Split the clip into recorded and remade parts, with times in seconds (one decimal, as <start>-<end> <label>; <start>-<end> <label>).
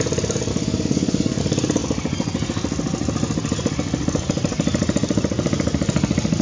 0.0-0.5 recorded; 0.5-1.4 remade; 1.4-6.4 recorded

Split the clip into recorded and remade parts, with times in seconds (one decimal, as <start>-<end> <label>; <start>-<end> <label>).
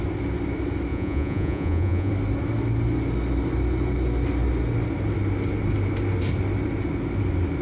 0.0-0.9 recorded; 0.9-2.1 remade; 2.1-7.6 recorded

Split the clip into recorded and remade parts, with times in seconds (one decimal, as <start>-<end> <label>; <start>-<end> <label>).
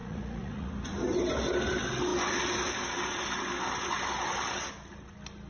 0.0-0.7 remade; 0.7-5.5 recorded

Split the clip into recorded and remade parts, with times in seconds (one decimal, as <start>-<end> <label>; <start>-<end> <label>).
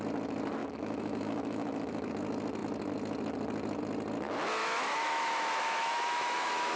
0.0-0.6 recorded; 0.6-2.1 remade; 2.1-4.6 recorded; 4.6-6.8 remade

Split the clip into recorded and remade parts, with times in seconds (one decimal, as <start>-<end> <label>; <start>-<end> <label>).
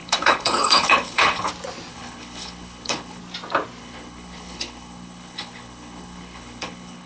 0.0-1.5 remade; 1.5-1.9 recorded; 1.9-3.2 remade; 3.2-3.8 recorded; 3.8-7.1 remade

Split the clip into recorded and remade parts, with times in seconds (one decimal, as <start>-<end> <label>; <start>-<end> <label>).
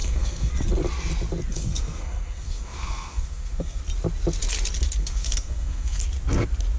0.0-0.5 remade; 0.5-1.5 recorded; 1.5-3.8 remade; 3.8-5.0 recorded; 5.0-6.0 remade; 6.0-6.8 recorded